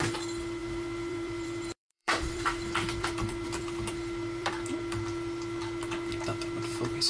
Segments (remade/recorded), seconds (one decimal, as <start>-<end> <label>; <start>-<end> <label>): 0.0-0.6 recorded; 0.6-4.7 remade; 4.7-7.1 recorded